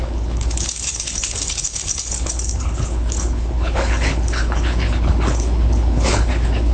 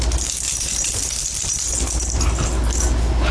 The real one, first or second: second